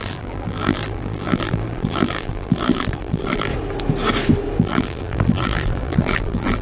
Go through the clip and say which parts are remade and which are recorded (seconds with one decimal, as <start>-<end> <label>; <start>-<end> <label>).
0.0-3.5 remade; 3.5-4.6 recorded; 4.6-6.6 remade